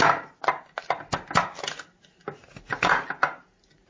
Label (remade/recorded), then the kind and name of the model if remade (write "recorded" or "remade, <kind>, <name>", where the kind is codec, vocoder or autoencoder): recorded